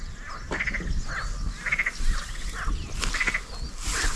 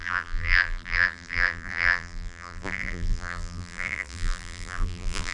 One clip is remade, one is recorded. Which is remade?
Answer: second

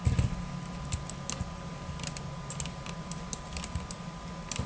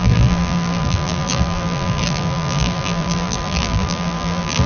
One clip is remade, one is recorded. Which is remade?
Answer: second